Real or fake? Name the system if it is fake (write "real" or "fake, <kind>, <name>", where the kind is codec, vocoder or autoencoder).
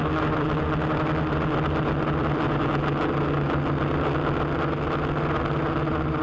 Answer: real